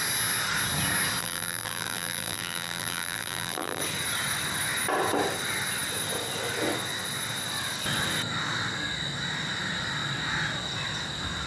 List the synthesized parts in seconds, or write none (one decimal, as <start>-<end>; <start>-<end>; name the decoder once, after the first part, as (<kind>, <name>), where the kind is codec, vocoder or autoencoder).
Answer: 1.2-3.8 (vocoder, BigVGAN v2)